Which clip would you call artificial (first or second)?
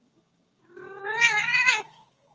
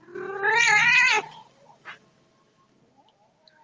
first